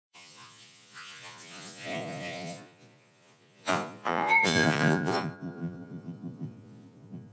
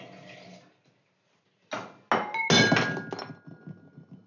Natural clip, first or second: second